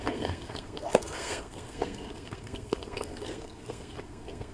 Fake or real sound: fake